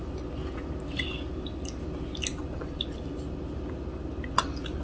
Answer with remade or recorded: recorded